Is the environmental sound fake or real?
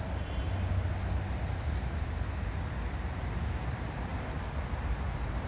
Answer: real